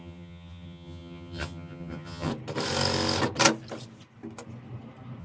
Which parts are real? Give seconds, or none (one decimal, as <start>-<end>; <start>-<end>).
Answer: 2.3-5.2